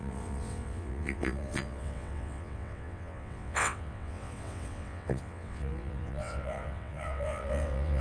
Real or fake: fake